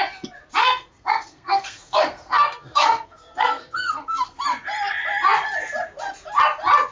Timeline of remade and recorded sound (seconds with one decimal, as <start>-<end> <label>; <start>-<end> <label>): 0.0-0.6 recorded; 0.6-4.4 remade; 4.4-6.9 recorded